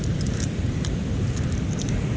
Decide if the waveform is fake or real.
fake